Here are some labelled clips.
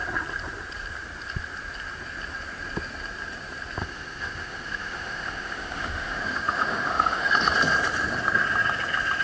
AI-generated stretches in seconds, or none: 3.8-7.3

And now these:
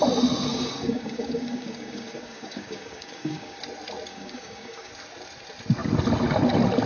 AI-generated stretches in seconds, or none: 0.5-3.6; 4.1-4.9